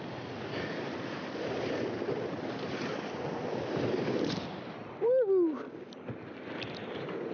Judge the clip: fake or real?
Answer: real